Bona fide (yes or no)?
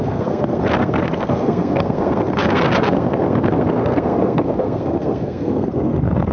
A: no